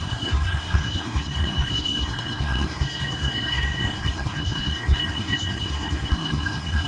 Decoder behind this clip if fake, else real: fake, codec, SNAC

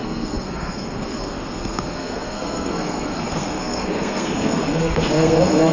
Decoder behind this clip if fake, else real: fake, codec, SNAC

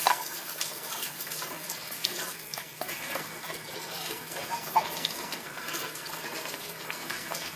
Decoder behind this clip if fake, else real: fake, codec, SNAC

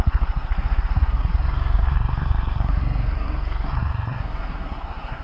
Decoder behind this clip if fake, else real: fake, codec, SNAC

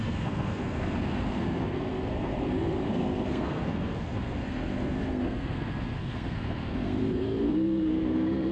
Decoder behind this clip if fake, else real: fake, codec, SNAC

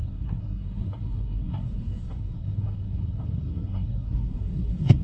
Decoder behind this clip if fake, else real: fake, codec, SNAC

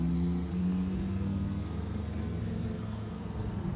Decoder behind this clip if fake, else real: fake, codec, SNAC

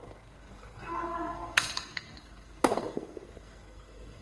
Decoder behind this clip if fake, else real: fake, codec, SNAC